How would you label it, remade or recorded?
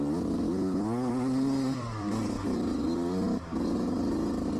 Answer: remade